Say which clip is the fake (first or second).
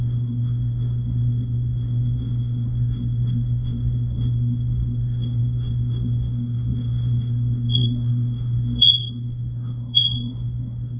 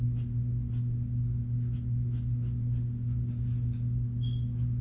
first